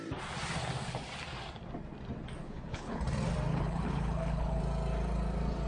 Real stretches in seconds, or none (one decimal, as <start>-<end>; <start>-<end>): 0.0-2.4; 3.0-3.5; 4.6-5.7